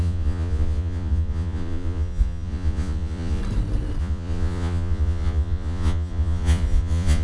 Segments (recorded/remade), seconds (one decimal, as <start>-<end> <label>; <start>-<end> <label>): 0.0-3.4 remade; 3.4-4.0 recorded; 4.0-7.2 remade